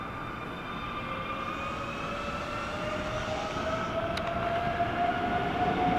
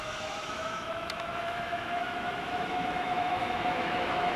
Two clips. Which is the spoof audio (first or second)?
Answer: second